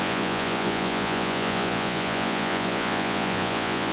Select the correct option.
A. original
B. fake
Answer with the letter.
B